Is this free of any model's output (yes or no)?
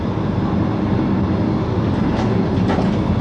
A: yes